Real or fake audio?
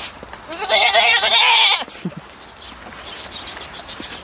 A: real